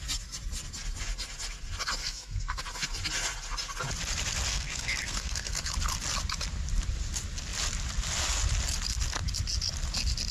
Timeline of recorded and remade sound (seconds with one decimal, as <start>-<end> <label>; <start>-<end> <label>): 0.0-2.0 recorded; 2.0-2.6 remade; 2.6-4.5 recorded; 4.5-5.7 remade; 5.7-10.3 recorded